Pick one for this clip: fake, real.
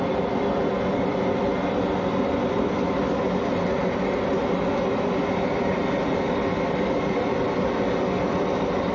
real